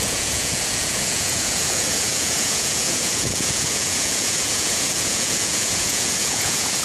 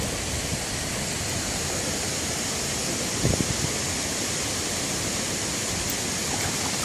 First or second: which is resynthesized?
first